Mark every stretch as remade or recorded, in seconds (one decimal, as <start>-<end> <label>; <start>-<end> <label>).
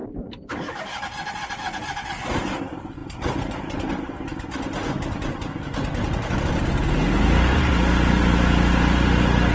0.0-3.0 recorded; 3.0-3.9 remade; 3.9-9.5 recorded